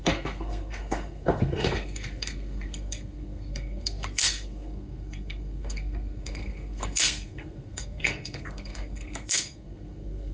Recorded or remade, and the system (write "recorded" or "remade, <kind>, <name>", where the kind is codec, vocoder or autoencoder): remade, codec, SNAC